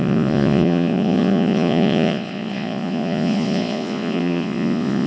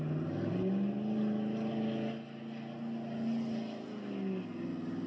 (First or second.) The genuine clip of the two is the second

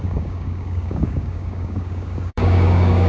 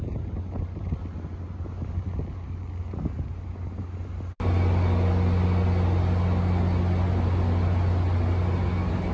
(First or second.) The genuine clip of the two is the second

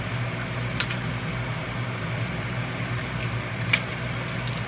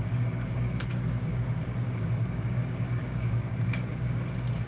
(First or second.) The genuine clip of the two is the first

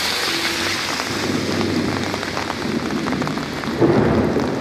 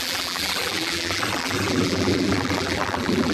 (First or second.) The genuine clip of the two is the first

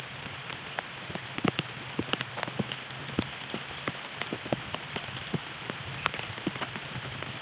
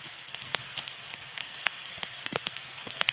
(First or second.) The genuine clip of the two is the first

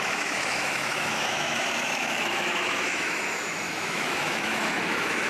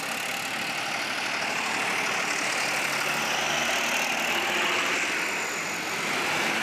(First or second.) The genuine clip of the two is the second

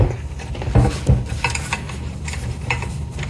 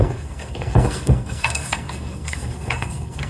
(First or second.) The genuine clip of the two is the first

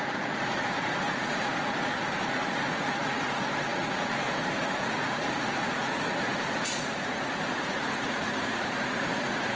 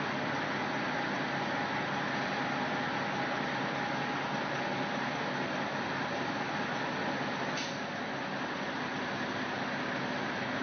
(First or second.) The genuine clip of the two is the second